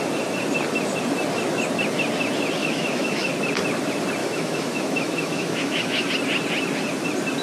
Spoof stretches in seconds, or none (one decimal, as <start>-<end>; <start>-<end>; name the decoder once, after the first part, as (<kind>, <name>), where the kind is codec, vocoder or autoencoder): 2.6-3.3 (autoencoder, DAC-VAE); 4.2-6.1